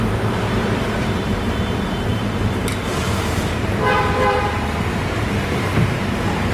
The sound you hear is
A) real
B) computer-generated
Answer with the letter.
B